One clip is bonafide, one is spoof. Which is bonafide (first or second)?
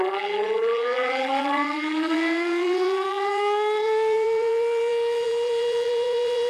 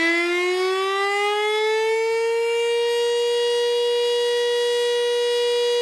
second